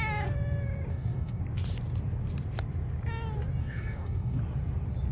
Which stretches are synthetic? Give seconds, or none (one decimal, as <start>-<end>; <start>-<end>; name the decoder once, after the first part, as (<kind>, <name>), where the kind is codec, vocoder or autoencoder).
0.9-1.4 (codec, DAC); 3.6-4.4